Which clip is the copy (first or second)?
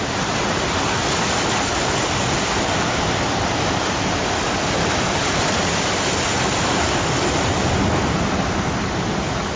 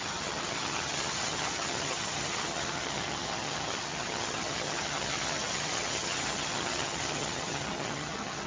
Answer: second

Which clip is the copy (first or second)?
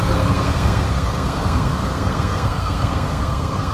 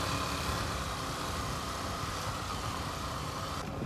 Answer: first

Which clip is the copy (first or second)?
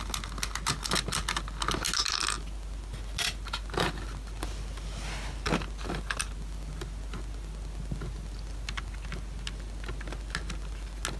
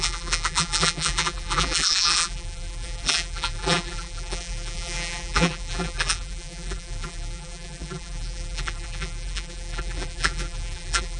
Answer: second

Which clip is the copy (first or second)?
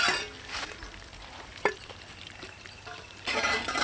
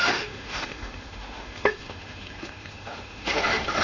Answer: second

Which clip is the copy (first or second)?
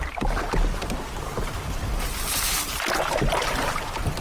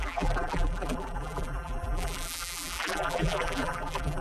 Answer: second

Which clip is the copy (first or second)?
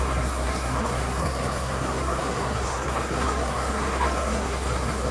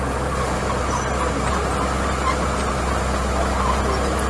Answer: first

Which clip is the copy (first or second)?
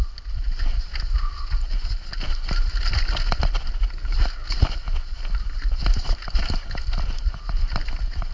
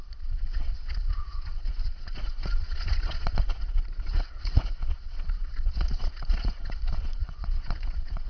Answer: second